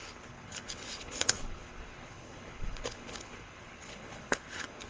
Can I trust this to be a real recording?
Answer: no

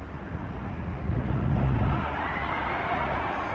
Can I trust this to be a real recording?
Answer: no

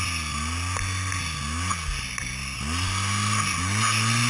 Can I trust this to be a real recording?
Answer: yes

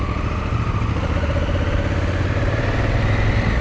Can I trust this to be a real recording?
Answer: yes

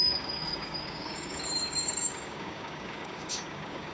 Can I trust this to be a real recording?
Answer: no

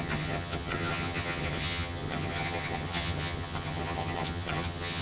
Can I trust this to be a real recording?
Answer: no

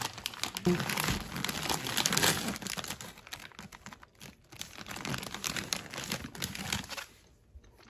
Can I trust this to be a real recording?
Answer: yes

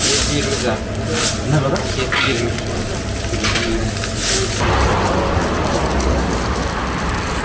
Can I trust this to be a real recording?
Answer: yes